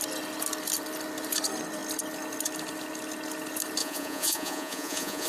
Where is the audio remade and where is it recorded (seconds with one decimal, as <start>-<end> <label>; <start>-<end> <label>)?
0.0-3.8 recorded; 3.8-5.3 remade